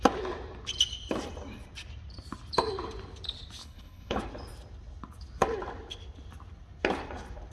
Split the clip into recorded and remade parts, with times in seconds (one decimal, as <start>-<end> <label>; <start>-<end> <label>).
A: 0.0-3.6 recorded; 3.6-4.2 remade; 4.2-7.5 recorded